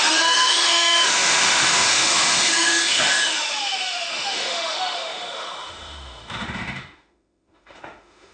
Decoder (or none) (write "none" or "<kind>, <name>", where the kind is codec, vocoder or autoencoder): autoencoder, DAC-VAE